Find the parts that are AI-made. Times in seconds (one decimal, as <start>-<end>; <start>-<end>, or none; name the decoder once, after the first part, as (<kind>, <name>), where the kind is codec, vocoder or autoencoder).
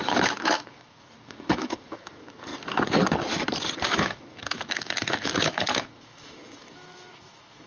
0.0-2.5 (autoencoder, DAC-VAE); 3.9-7.7